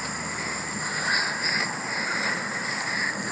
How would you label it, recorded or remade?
recorded